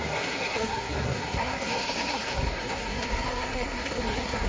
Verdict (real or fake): fake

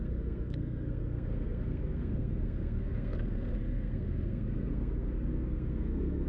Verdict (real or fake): fake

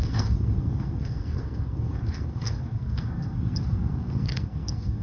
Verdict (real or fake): fake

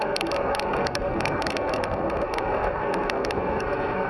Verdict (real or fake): fake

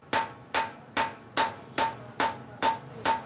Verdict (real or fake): real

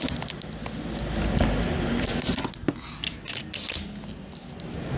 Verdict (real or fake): real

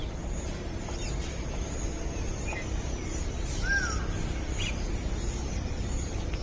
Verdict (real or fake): real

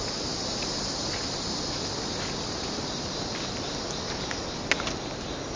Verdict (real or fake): real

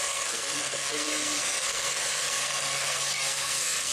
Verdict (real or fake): fake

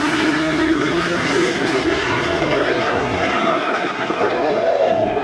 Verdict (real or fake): fake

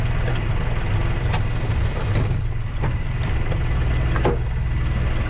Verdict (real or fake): real